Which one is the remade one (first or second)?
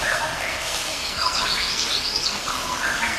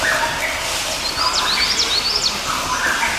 first